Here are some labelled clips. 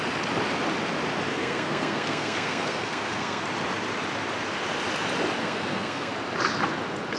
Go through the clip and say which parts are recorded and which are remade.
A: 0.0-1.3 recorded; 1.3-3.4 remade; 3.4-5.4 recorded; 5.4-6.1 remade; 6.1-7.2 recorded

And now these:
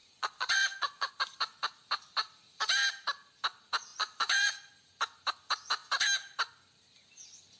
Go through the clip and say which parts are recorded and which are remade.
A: 0.0-1.1 remade; 1.1-3.9 recorded; 3.9-4.7 remade; 4.7-7.6 recorded

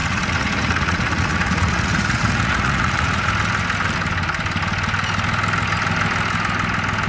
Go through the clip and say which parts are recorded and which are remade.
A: 0.0-3.3 remade; 3.3-7.1 recorded

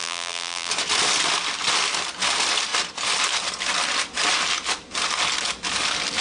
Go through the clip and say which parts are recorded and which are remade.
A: 0.0-0.7 remade; 0.7-6.2 recorded

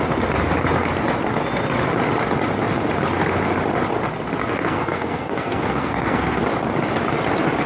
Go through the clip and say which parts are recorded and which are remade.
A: 0.0-4.4 recorded; 4.4-6.4 remade; 6.4-7.7 recorded

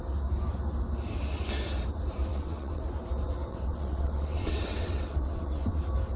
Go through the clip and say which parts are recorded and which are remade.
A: 0.0-2.3 recorded; 2.3-2.8 remade; 2.8-3.5 recorded; 3.5-5.8 remade; 5.8-6.2 recorded

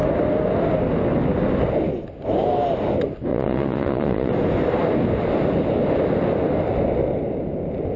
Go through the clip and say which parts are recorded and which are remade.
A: 0.0-3.3 recorded; 3.3-4.3 remade; 4.3-8.0 recorded